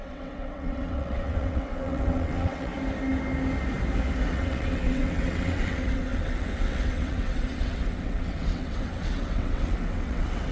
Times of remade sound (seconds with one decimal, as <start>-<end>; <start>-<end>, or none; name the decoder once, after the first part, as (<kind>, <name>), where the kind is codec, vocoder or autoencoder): 0.0-2.7 (vocoder, WaveNeXt); 4.3-10.5